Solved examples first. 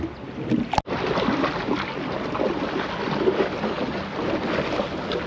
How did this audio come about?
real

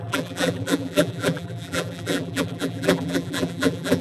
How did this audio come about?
fake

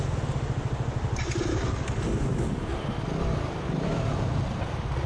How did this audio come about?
real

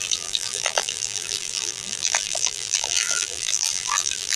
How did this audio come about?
fake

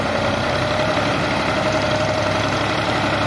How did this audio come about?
fake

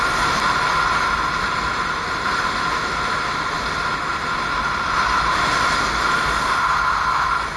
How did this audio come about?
real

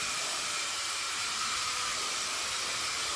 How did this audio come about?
fake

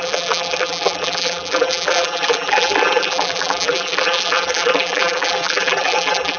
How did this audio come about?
fake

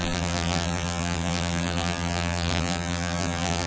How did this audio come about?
fake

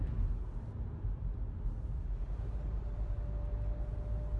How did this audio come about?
real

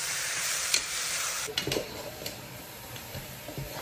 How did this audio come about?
fake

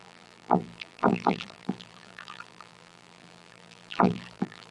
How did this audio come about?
fake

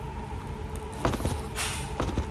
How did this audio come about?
real